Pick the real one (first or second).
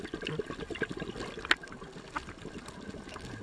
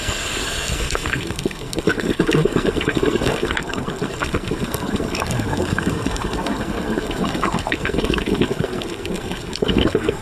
first